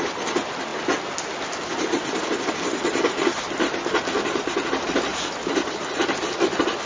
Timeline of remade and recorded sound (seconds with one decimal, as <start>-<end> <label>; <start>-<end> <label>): 0.0-6.9 recorded